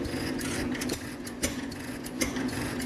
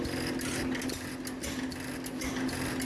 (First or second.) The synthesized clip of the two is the first